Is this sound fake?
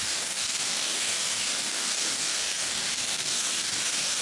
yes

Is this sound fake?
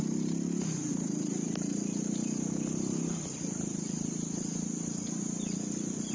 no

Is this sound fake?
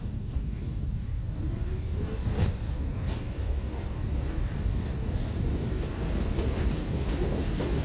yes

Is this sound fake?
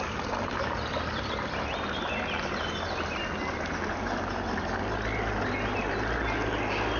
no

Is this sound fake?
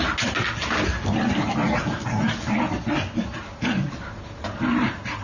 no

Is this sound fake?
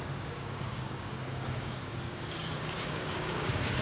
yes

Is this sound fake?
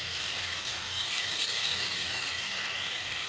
yes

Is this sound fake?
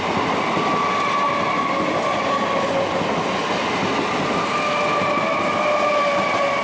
no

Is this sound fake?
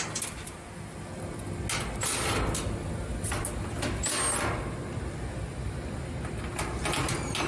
no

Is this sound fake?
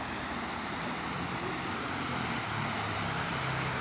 no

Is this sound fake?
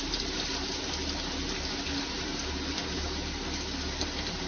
no